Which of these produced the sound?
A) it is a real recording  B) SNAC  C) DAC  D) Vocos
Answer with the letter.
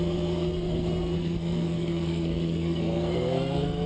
B